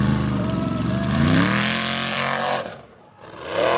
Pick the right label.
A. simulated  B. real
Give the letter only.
A